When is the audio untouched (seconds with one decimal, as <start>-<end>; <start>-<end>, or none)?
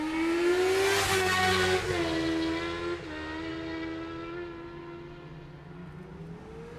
0.0-6.8